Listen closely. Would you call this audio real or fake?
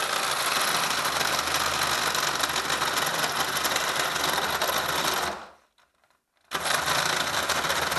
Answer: real